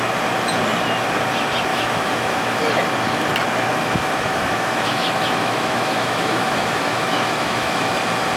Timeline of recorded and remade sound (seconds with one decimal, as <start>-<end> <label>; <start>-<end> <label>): 0.0-1.7 recorded; 1.7-2.6 remade; 2.6-3.7 recorded; 3.7-7.9 remade; 7.9-8.4 recorded